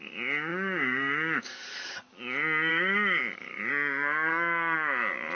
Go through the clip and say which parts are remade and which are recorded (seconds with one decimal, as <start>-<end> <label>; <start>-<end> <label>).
0.0-0.5 recorded; 0.5-1.9 remade; 1.9-2.7 recorded; 2.7-3.7 remade; 3.7-4.3 recorded; 4.3-5.3 remade